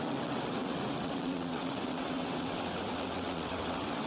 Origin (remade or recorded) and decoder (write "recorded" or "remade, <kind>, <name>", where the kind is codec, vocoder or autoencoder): remade, vocoder, WaveNeXt